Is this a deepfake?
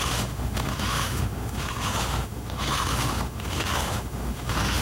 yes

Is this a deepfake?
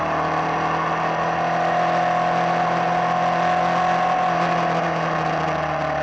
no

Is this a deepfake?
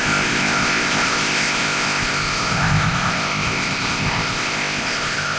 yes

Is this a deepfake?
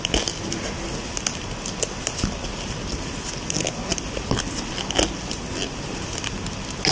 no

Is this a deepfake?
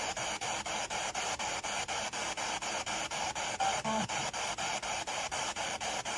no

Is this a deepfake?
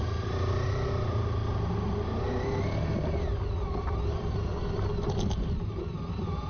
no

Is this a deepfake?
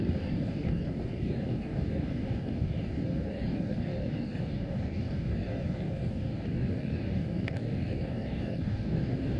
yes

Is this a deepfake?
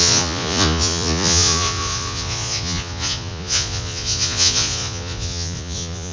yes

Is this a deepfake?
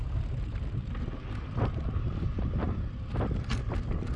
no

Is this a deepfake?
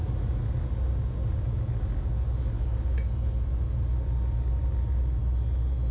no